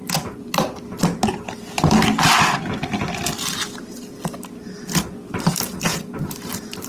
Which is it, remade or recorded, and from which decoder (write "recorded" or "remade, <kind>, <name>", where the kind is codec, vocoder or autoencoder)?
recorded